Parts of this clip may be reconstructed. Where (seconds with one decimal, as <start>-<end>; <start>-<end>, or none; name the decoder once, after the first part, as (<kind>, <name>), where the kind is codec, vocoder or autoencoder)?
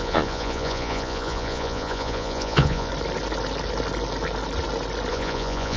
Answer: 0.0-2.9 (vocoder, Vocos); 5.1-5.8